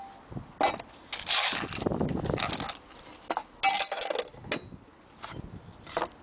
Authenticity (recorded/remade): recorded